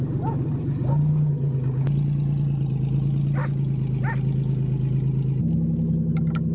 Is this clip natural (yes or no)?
yes